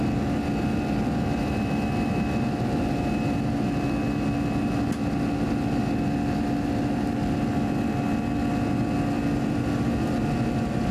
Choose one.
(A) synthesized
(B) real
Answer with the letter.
B